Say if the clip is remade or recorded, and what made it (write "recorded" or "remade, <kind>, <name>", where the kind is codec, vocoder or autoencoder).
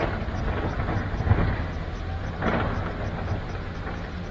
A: recorded